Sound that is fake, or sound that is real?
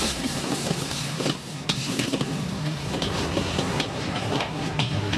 fake